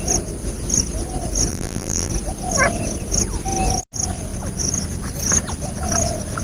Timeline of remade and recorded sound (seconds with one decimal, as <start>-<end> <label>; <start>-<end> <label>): 0.0-1.5 recorded; 1.5-2.1 remade; 2.1-6.4 recorded